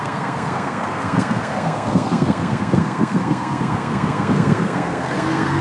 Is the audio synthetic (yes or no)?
yes